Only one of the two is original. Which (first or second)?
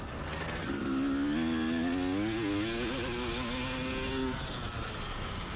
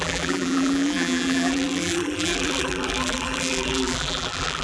first